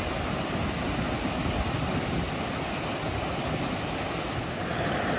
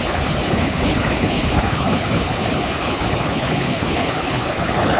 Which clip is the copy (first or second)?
second